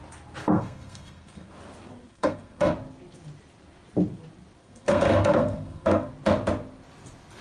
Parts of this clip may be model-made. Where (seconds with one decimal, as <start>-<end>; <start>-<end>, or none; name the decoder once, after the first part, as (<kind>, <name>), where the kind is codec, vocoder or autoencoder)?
0.4-1.5 (codec, SNAC); 2.1-2.7; 4.6-6.1